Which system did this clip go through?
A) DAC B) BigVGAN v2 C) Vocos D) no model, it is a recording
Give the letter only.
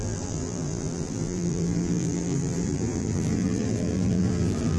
B